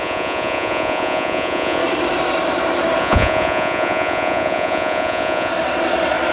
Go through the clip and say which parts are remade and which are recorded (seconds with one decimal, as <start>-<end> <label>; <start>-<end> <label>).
0.0-1.8 remade; 1.8-3.0 recorded; 3.0-5.5 remade; 5.5-6.3 recorded